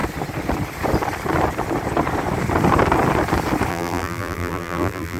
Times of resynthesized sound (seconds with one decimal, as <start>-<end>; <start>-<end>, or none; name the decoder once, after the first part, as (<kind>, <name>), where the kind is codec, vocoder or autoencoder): 3.7-5.2 (vocoder, BigVGAN v2)